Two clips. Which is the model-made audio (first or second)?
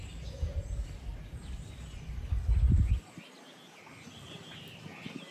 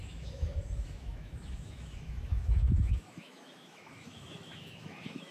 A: second